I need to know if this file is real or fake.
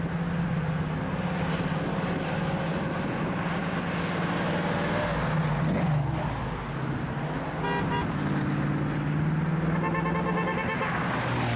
real